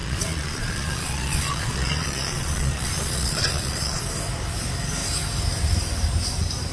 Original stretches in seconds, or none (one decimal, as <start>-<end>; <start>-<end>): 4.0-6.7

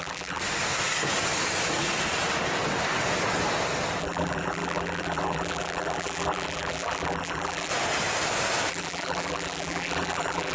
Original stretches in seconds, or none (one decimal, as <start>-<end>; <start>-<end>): 0.4-4.0; 7.7-8.7

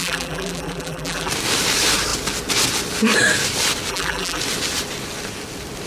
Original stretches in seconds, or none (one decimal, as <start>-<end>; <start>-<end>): 1.3-3.9; 4.4-5.9

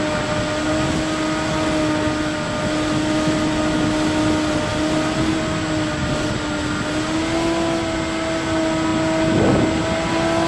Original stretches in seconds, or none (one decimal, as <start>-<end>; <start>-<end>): 0.0-10.5